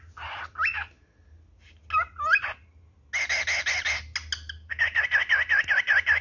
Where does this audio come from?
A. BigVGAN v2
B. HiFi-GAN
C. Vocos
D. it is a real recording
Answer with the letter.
D